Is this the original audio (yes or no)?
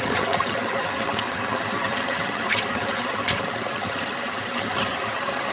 no